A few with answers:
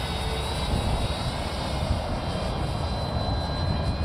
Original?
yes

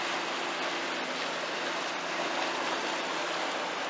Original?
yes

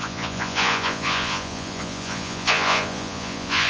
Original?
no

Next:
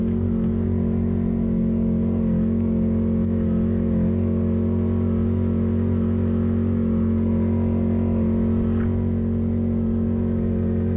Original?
yes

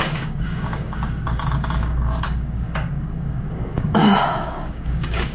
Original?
no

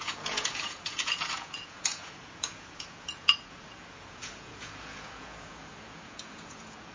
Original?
no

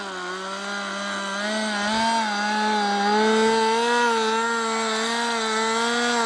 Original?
yes